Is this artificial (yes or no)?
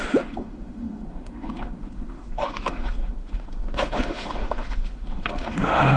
yes